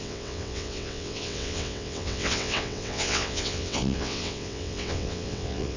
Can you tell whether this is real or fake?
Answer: fake